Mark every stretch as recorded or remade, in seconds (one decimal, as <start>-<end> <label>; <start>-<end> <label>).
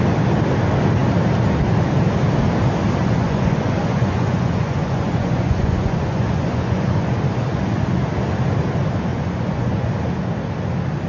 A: 0.0-3.0 recorded; 3.0-7.1 remade; 7.1-7.5 recorded; 7.5-8.0 remade; 8.0-9.1 recorded; 9.1-9.9 remade; 9.9-11.1 recorded